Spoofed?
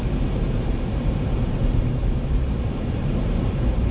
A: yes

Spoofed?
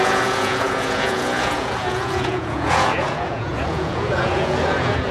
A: yes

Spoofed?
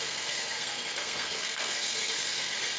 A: yes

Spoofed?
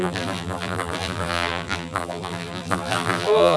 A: yes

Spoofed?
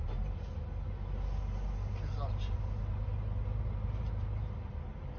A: no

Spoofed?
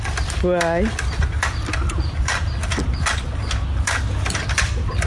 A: no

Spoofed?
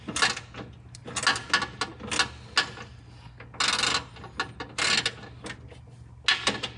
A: no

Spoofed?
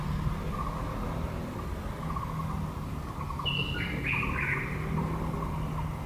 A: no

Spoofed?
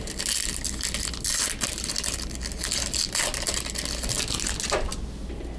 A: no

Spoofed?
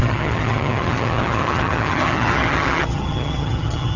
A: yes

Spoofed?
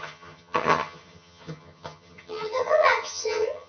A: yes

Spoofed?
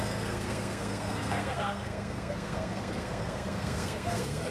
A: yes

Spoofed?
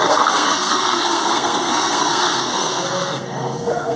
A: yes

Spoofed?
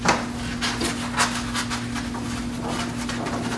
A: no